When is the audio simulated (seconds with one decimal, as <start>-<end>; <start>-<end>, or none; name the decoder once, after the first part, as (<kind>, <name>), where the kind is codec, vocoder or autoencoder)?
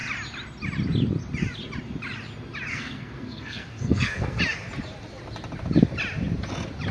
2.7-4.4 (codec, SNAC)